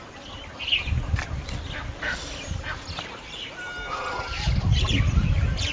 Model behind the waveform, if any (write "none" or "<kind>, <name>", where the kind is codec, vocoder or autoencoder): none